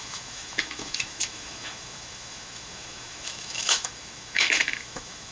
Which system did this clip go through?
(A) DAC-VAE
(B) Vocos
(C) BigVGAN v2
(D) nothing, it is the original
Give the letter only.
A